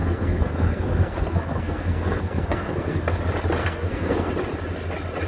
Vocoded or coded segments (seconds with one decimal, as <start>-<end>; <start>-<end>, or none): 0.0-3.2; 3.6-4.3